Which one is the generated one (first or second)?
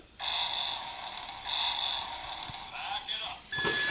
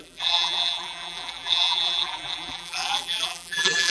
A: second